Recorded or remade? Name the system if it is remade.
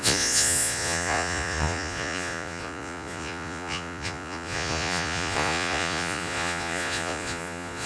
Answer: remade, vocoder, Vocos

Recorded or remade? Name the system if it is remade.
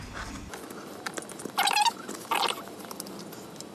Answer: recorded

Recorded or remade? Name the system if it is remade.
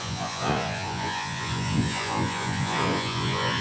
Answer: remade, vocoder, Vocos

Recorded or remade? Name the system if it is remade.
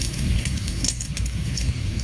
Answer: remade, codec, SNAC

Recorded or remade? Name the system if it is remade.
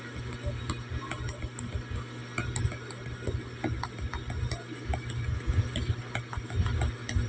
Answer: recorded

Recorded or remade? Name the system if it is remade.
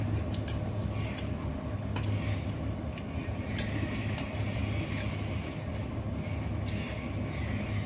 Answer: recorded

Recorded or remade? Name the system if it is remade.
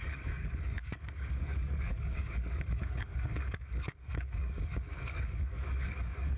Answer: remade, codec, DAC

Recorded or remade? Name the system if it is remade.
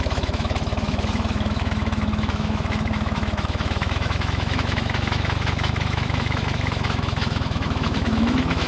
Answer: remade, autoencoder, DAC-VAE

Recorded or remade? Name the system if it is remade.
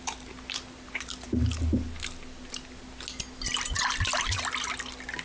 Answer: recorded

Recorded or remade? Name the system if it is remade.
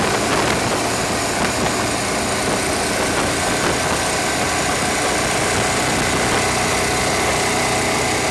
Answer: recorded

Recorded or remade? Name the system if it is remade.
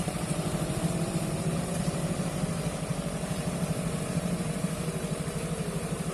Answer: remade, vocoder, BigVGAN v2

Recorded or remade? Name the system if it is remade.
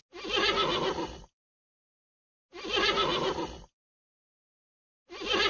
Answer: recorded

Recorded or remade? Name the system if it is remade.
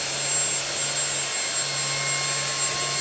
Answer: recorded